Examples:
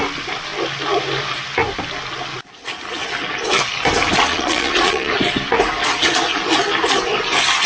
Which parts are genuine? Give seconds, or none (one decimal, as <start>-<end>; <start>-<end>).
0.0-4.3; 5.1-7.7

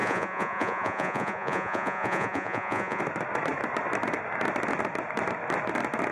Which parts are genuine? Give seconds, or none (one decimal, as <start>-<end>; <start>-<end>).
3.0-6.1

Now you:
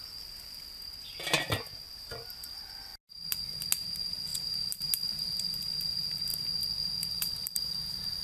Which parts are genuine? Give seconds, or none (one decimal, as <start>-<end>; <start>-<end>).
0.0-8.2

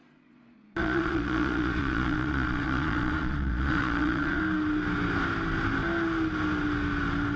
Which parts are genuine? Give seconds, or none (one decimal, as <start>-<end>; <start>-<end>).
4.4-7.4